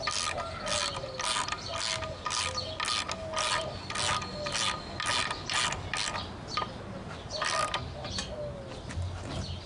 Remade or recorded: recorded